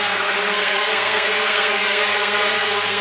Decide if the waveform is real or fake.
fake